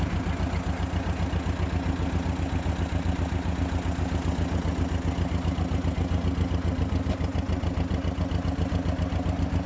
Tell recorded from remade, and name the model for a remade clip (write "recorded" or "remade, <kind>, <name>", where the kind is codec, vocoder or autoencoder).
recorded